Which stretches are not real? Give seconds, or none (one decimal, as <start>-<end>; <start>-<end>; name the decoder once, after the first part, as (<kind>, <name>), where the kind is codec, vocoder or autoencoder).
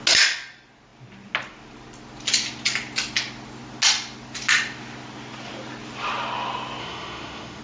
6.8-7.6 (autoencoder, DAC-VAE)